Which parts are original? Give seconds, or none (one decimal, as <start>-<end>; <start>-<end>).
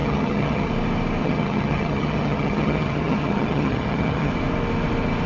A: 0.7-1.2; 4.3-5.3